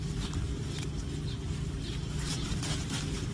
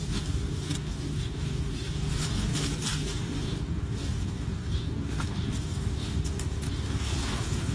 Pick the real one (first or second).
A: first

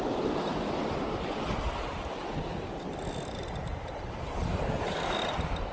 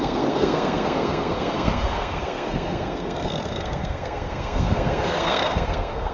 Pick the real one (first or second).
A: first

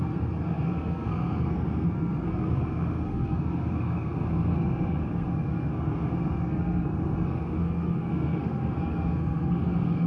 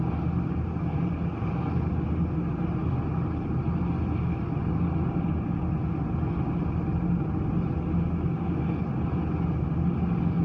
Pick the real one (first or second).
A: second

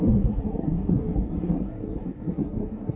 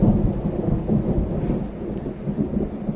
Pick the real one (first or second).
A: second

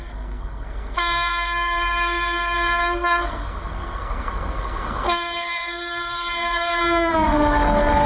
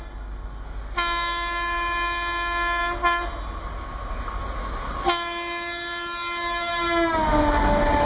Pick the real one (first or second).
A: second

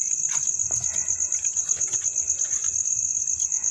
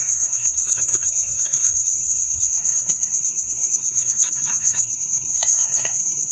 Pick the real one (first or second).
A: first